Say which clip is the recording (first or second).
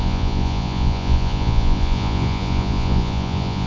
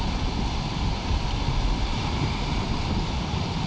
second